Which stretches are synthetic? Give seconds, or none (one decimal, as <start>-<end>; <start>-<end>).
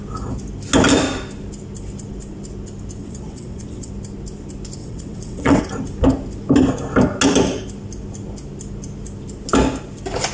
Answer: 3.0-3.9; 4.8-5.6